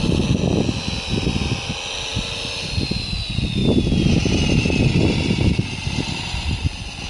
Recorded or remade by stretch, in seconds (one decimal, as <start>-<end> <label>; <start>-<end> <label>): 0.0-7.1 recorded